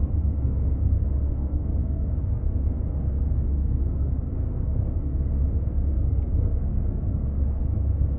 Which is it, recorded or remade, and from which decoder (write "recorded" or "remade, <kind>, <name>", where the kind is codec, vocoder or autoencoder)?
remade, codec, SNAC